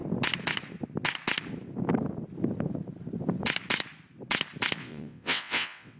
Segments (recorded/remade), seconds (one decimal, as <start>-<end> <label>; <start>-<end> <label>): 0.0-4.8 recorded; 4.8-6.0 remade